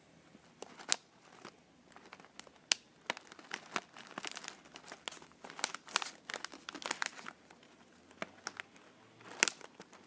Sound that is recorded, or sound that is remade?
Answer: recorded